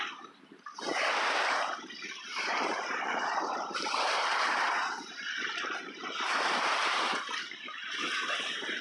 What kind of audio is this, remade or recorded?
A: remade